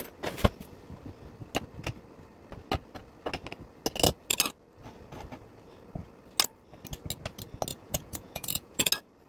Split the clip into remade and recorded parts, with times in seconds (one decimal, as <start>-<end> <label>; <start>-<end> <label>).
0.0-7.7 recorded; 7.7-8.9 remade; 8.9-9.3 recorded